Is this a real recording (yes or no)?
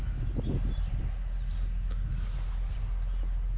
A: yes